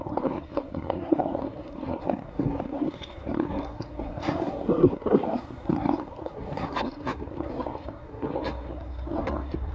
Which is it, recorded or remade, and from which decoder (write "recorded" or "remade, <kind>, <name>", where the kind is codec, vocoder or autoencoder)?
remade, codec, SNAC